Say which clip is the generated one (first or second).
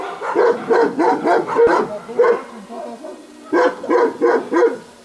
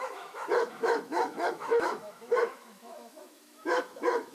second